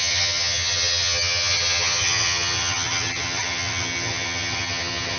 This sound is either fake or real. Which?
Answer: fake